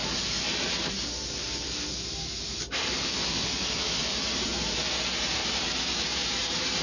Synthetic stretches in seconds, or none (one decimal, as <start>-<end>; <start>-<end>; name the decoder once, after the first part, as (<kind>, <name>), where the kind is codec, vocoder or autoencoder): 0.0-2.8 (vocoder, BigVGAN v2); 4.0-6.8